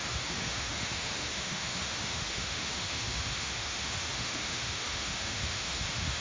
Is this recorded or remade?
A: remade